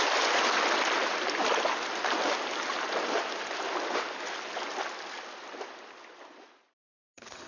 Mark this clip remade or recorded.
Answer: recorded